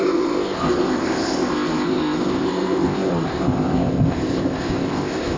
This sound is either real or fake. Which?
fake